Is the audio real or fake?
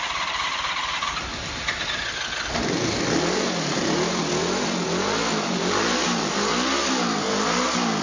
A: real